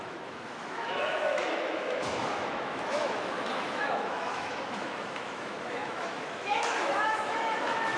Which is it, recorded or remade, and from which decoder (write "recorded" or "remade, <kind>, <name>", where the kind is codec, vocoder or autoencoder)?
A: remade, autoencoder, DAC-VAE